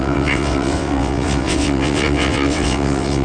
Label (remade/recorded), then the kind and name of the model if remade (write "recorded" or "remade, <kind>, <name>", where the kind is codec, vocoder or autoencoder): remade, vocoder, WaveNeXt